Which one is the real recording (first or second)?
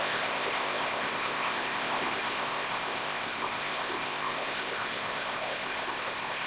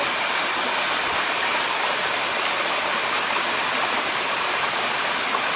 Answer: second